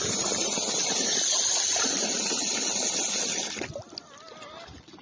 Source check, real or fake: real